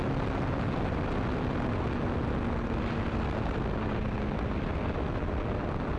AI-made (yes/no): no